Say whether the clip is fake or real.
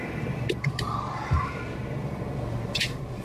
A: real